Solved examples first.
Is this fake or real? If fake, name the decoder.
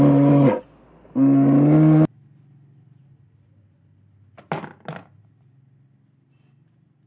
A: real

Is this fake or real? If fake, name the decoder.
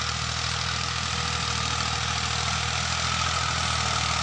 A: real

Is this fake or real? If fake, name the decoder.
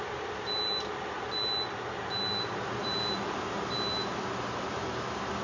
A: real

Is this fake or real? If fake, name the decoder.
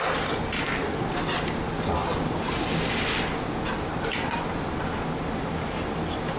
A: real